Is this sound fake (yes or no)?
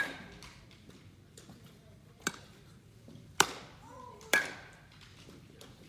yes